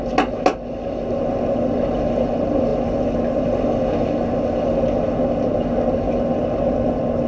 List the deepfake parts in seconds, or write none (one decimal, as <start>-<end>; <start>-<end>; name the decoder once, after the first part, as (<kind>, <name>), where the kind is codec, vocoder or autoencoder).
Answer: none